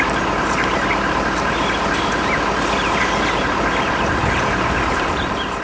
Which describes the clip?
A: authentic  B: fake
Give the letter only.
A